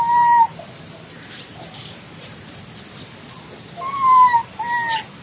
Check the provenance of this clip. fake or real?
real